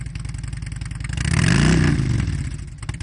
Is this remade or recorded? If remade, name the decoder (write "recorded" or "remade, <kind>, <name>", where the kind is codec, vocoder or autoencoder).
recorded